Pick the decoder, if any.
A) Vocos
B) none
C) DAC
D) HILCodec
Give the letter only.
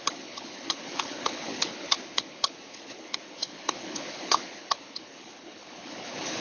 D